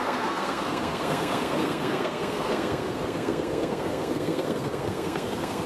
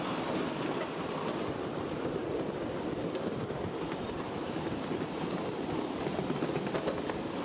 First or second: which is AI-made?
first